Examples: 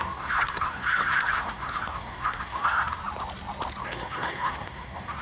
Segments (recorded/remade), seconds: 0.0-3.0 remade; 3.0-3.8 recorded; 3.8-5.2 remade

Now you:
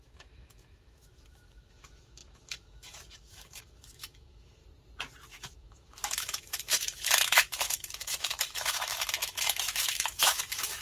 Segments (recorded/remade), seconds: 0.0-4.6 remade; 4.6-5.3 recorded; 5.3-10.8 remade

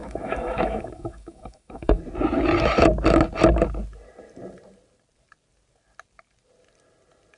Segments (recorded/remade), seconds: 0.0-2.0 remade; 2.0-7.4 recorded

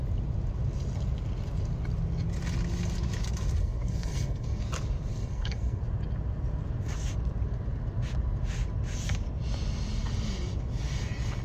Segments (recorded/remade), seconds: 0.0-3.6 recorded; 3.6-4.6 remade; 4.6-5.1 recorded; 5.1-5.8 remade; 5.8-11.4 recorded

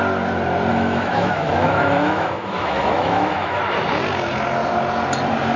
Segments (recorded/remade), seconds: 0.0-0.7 recorded; 0.7-3.6 remade; 3.6-5.6 recorded

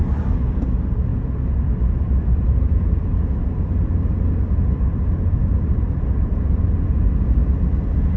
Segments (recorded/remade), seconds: 0.0-8.2 recorded

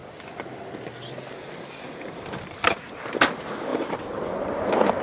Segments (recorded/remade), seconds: 0.0-3.7 recorded; 3.7-4.2 remade; 4.2-5.0 recorded